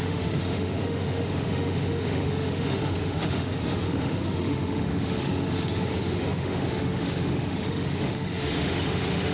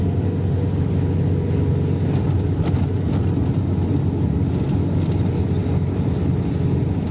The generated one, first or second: first